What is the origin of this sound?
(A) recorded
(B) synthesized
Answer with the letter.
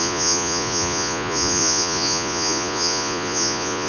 B